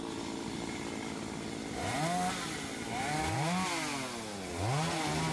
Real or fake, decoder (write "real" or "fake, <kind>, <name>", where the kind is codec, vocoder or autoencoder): real